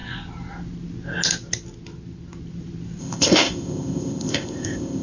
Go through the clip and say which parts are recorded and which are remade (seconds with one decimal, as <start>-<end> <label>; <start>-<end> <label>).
0.0-3.0 recorded; 3.0-5.0 remade